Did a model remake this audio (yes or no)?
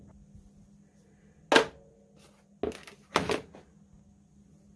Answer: no